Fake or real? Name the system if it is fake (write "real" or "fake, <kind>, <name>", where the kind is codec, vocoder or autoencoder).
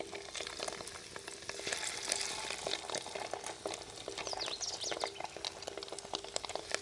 real